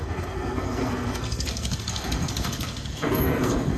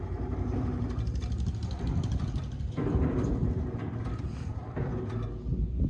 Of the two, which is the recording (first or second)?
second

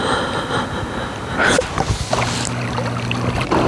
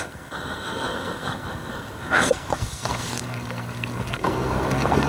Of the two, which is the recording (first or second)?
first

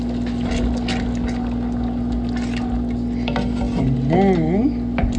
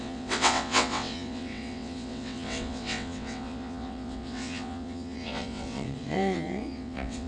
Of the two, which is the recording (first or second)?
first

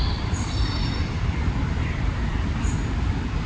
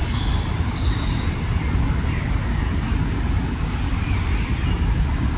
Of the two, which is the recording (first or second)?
second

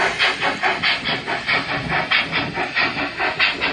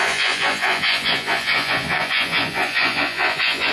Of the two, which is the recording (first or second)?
first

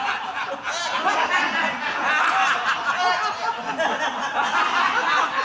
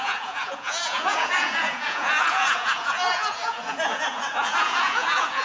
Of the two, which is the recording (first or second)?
first